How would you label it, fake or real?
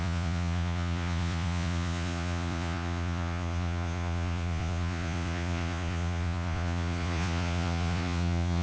fake